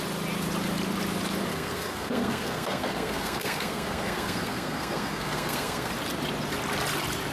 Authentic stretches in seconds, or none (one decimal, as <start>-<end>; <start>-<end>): 0.0-1.5; 5.9-7.3